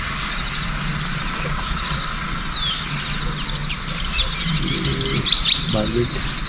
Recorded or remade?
recorded